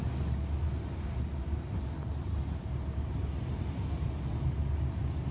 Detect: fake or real real